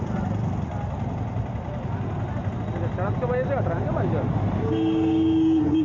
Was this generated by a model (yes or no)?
no